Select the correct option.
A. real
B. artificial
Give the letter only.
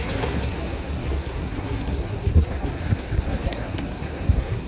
B